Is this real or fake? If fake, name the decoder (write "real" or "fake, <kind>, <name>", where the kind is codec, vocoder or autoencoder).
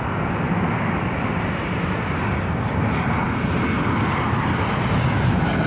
real